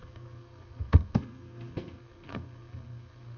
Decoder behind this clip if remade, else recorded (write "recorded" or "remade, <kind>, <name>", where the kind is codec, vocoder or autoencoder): remade, codec, SNAC